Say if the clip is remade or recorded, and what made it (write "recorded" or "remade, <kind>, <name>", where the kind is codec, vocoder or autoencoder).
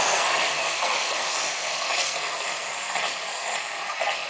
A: remade, codec, SNAC